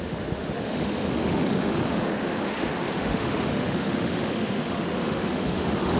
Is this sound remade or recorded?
remade